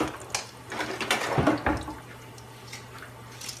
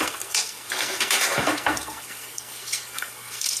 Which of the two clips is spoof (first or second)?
second